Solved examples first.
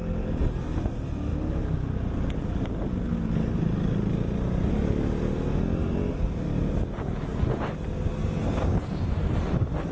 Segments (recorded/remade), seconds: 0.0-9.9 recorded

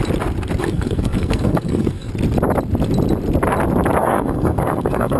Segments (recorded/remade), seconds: 0.0-0.6 recorded; 0.6-2.1 remade; 2.1-4.0 recorded; 4.0-5.2 remade

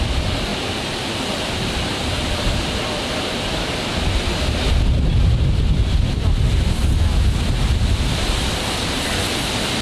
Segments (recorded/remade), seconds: 0.0-6.8 remade; 6.8-8.8 recorded; 8.8-9.8 remade

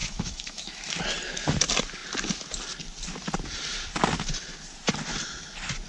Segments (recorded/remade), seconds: 0.0-1.0 remade; 1.0-5.9 recorded